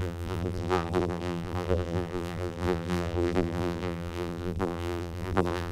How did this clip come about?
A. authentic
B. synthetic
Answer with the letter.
B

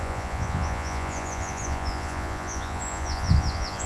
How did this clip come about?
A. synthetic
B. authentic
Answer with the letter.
A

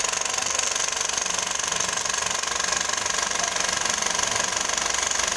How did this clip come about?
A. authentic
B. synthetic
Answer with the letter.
A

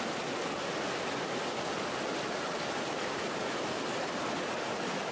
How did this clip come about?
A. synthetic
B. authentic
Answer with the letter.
B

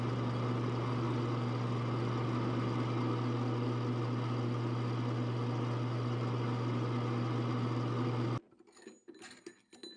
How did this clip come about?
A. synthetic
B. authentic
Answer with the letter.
B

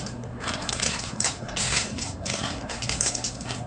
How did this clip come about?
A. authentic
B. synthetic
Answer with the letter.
B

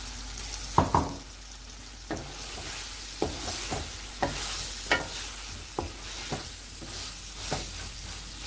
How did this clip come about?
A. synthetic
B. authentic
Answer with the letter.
B